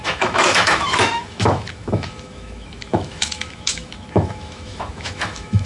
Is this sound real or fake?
fake